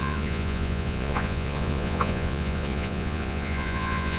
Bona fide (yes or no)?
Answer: no